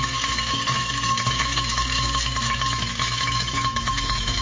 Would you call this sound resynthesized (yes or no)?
yes